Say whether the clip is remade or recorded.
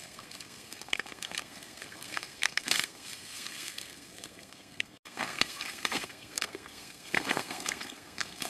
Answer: remade